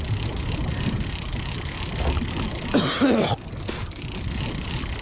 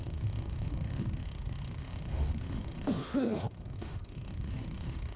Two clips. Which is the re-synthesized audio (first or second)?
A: second